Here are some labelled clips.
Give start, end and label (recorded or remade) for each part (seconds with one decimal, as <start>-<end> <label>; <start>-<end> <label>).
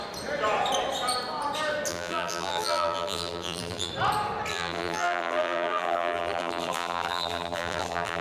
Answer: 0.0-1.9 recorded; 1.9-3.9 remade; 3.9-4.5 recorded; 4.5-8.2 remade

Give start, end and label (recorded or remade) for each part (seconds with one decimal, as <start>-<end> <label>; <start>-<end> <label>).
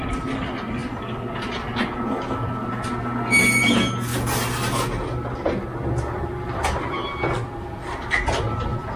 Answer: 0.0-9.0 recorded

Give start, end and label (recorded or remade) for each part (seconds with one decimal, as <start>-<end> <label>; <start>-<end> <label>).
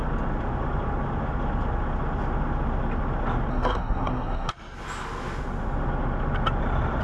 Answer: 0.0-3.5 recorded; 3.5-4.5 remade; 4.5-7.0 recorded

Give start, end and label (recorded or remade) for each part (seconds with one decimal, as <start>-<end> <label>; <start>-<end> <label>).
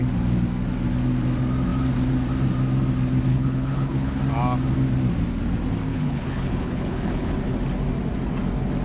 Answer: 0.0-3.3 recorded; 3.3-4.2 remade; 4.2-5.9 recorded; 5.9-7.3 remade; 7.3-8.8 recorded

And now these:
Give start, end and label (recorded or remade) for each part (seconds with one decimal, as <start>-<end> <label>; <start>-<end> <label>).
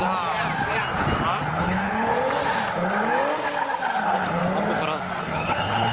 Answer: 0.0-1.5 recorded; 1.5-2.1 remade; 2.1-4.0 recorded; 4.0-4.4 remade; 4.4-5.2 recorded; 5.2-5.9 remade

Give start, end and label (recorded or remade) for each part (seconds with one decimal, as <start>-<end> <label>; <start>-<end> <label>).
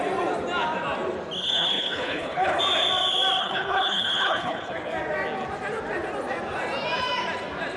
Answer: 0.0-1.4 recorded; 1.4-2.6 remade; 2.6-3.4 recorded; 3.4-4.7 remade; 4.7-7.8 recorded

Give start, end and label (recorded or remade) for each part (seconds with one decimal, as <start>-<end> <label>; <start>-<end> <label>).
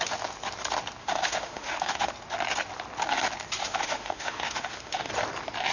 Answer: 0.0-1.0 recorded; 1.0-2.1 remade; 2.1-3.6 recorded; 3.6-5.1 remade; 5.1-5.7 recorded